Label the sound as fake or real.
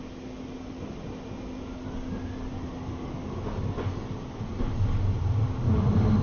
real